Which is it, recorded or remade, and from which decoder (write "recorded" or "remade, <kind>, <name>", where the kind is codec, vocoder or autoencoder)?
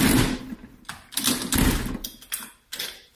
recorded